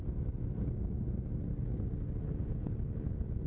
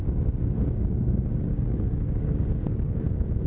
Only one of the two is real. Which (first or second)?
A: first